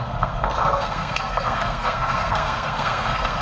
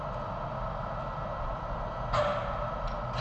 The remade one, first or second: first